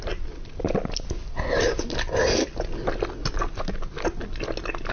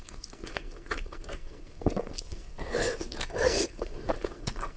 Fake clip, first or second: second